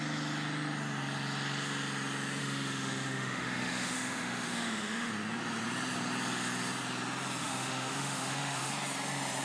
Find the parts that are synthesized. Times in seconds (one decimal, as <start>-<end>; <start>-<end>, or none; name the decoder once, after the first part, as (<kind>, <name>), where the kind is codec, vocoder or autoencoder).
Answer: 2.4-5.1 (autoencoder, DAC-VAE); 7.4-8.7